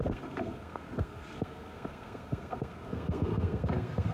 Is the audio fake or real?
fake